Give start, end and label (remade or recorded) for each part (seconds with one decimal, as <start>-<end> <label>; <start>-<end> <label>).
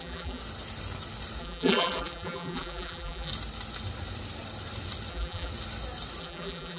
0.0-0.4 remade; 0.4-1.4 recorded; 1.4-3.3 remade; 3.3-5.1 recorded; 5.1-5.5 remade; 5.5-6.2 recorded; 6.2-6.8 remade